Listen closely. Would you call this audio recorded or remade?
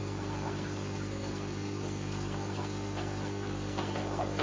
remade